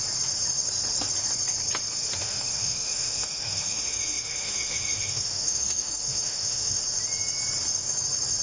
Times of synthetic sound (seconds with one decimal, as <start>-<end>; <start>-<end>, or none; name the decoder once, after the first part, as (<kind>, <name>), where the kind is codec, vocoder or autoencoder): 2.2-6.8 (autoencoder, DAC-VAE)